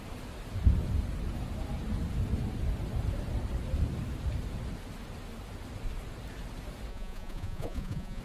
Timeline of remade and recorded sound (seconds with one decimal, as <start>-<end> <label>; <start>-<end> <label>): 0.0-6.9 recorded; 6.9-8.2 remade